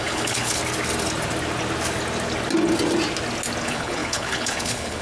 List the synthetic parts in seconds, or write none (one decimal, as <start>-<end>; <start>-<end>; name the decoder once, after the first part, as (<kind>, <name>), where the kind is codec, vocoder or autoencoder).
0.0-0.6 (codec, HILCodec); 3.6-5.0